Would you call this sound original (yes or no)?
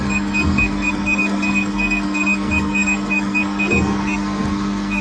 no